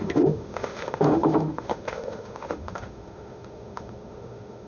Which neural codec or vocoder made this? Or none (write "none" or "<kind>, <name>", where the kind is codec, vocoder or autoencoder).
autoencoder, DAC-VAE